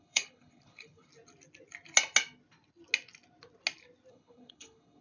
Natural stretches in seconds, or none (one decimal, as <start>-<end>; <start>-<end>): 1.1-4.1